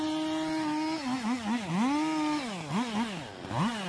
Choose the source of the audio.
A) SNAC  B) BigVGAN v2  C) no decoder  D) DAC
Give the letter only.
C